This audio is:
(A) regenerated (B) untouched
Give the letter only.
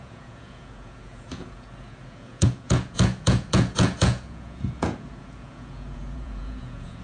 A